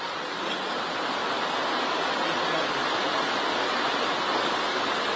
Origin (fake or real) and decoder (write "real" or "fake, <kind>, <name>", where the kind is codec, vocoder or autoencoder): real